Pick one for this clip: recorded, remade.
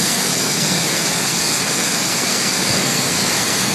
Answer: remade